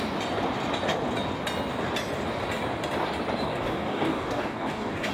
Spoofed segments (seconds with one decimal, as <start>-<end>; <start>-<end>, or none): 3.5-5.1